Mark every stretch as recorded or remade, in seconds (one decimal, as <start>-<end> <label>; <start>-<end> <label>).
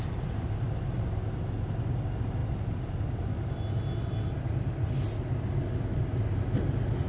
0.0-7.1 recorded